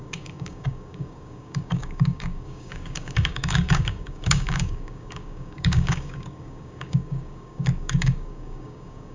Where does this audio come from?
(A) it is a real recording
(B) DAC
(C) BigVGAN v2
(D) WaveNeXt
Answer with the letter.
B